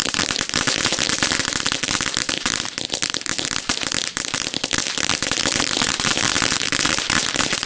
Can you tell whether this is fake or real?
fake